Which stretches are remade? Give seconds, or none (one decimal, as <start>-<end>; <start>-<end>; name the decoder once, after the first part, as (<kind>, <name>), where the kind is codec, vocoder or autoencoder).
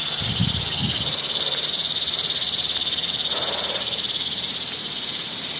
0.0-5.6 (vocoder, BigVGAN v2)